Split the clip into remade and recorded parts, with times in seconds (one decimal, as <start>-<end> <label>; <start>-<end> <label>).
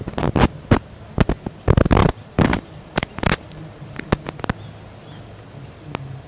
0.0-2.0 recorded; 2.0-4.1 remade; 4.1-6.3 recorded